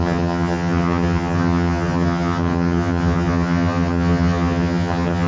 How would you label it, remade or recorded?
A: remade